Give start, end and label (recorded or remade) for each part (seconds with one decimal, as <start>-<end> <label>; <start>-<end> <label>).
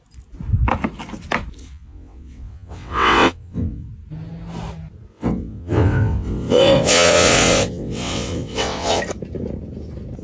0.0-1.6 recorded; 1.6-3.9 remade; 3.9-5.1 recorded; 5.1-9.0 remade; 9.0-10.2 recorded